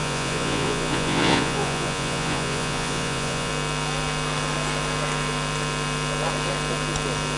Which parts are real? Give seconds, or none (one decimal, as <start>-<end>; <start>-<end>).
3.5-7.4